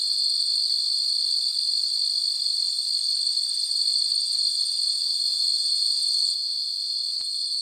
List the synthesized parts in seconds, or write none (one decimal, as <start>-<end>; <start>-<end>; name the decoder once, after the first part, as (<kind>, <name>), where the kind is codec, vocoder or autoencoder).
none